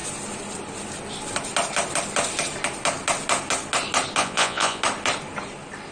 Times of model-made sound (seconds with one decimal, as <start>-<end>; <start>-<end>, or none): 4.2-4.8